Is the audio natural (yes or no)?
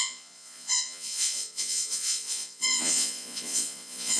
no